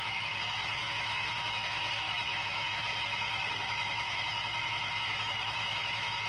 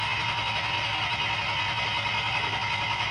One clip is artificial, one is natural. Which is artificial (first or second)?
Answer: first